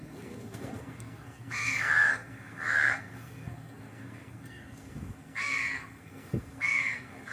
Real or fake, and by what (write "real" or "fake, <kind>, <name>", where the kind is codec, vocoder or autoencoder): fake, codec, SNAC